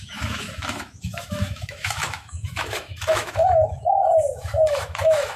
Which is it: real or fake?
fake